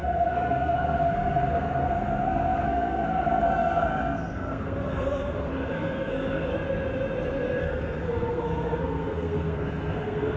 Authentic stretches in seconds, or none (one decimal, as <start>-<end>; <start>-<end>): 6.5-7.6